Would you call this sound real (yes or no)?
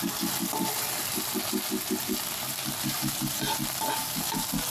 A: yes